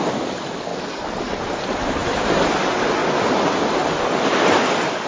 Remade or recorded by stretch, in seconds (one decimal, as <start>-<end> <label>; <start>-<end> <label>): 0.0-5.1 recorded